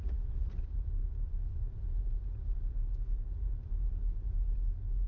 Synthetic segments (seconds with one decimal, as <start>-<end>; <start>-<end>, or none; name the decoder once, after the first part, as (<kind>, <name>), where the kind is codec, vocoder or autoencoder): 0.0-0.6 (vocoder, Vocos)